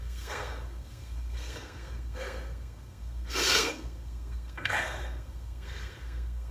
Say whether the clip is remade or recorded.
remade